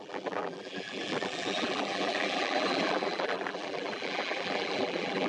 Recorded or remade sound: remade